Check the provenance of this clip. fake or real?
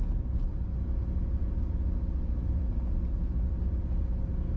real